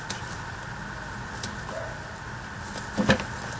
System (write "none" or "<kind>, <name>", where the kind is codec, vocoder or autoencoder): none